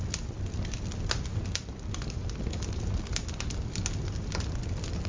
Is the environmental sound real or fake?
real